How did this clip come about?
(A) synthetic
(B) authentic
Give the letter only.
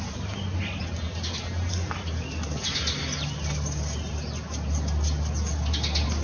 B